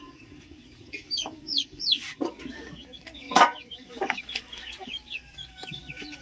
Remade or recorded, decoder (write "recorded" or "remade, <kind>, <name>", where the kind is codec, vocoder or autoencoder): remade, codec, DAC